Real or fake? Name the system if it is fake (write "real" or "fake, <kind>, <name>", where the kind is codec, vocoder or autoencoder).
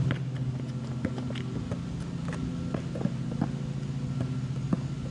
real